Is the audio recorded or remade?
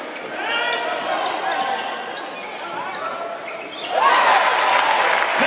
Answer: recorded